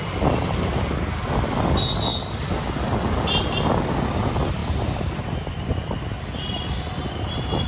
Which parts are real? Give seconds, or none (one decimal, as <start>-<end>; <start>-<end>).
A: 0.0-4.6; 5.2-7.7